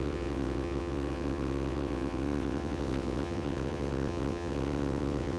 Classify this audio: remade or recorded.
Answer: remade